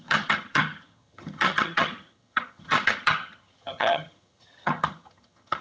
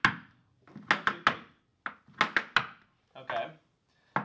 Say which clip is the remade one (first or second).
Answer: first